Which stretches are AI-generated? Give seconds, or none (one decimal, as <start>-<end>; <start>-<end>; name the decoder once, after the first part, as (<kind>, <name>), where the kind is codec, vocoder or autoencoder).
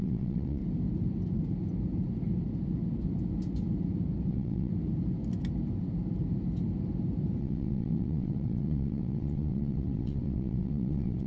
0.0-0.6 (vocoder, WaveNeXt); 4.3-4.7; 7.4-11.3